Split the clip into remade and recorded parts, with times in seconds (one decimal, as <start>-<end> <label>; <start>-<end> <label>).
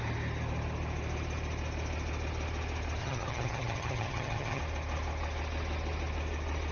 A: 0.0-3.0 recorded; 3.0-4.6 remade; 4.6-6.7 recorded